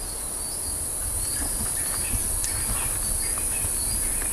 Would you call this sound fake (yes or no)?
no